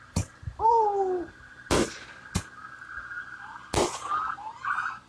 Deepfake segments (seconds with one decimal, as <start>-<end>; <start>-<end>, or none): none